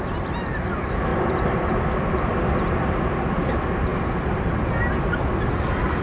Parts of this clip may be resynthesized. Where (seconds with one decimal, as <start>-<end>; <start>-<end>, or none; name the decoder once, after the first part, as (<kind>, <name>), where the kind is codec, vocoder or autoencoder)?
1.1-2.1 (vocoder, BigVGAN v2)